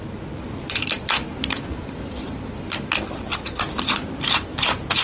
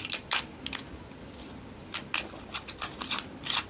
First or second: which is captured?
second